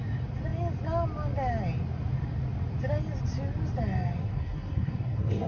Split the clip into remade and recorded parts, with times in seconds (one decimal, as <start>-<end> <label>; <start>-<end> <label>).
0.0-4.2 recorded; 4.2-5.5 remade